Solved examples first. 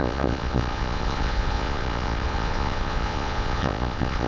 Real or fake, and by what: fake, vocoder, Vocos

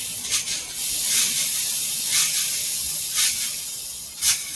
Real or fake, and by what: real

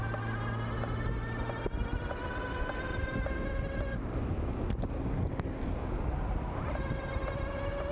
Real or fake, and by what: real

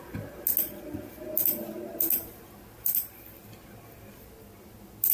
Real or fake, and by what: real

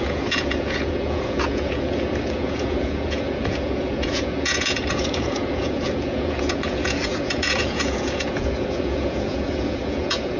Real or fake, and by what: fake, vocoder, Vocos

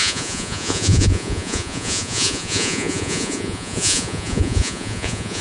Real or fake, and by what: fake, vocoder, Vocos